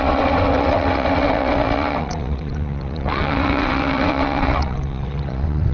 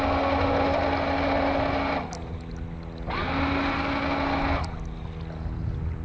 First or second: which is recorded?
second